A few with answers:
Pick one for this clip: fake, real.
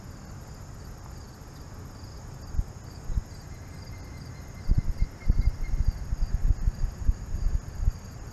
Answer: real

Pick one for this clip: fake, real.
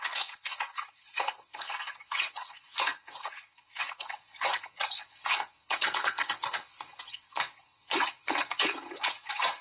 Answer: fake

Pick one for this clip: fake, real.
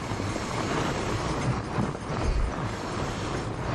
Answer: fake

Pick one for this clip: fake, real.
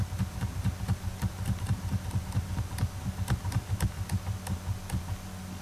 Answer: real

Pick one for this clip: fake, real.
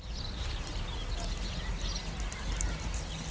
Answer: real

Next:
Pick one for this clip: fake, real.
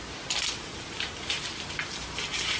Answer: real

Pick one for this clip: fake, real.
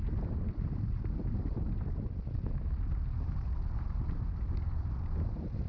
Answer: real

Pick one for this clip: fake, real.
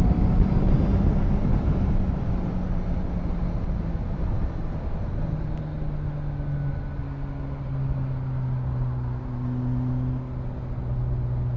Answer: real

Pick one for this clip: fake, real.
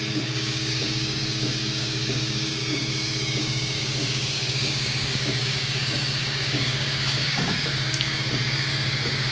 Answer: fake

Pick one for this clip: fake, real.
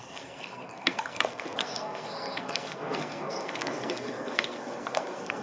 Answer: fake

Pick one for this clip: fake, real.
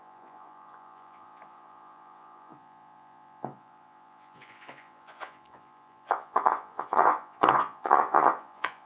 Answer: fake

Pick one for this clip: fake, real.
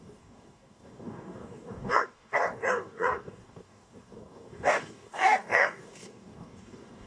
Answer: fake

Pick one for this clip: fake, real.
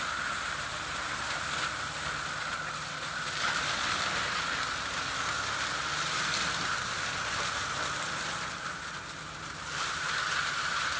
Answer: real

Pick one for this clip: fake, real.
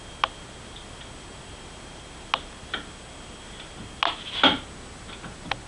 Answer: real